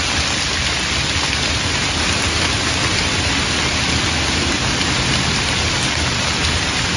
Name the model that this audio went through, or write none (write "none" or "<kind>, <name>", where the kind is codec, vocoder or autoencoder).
none